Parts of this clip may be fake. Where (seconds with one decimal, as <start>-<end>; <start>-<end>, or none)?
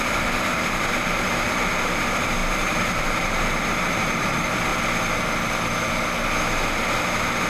0.0-4.7